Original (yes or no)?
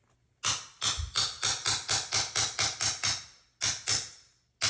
yes